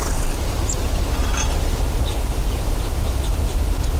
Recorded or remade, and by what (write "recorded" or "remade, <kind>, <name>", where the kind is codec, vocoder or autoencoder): remade, vocoder, BigVGAN v2